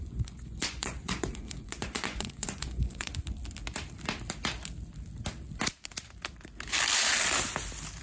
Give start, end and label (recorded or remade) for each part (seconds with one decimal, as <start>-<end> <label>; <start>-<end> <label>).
0.0-3.1 remade; 3.1-8.0 recorded